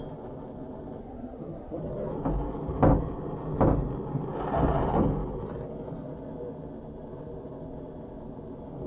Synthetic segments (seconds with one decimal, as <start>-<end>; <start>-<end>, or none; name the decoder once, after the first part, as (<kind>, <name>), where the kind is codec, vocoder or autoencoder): 1.0-1.8 (codec, SNAC)